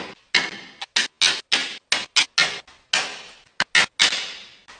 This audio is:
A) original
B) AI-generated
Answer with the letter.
A